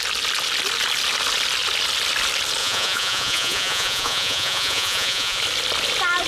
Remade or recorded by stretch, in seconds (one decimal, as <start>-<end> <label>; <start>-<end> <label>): 0.0-2.6 recorded; 2.6-5.4 remade; 5.4-6.3 recorded